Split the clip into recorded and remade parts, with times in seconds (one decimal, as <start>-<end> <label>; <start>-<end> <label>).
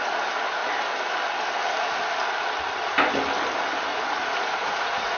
0.0-3.9 recorded; 3.9-5.2 remade